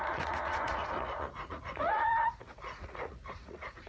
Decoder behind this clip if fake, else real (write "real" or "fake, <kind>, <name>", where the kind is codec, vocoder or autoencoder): fake, vocoder, Vocos